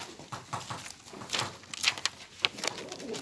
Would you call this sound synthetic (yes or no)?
no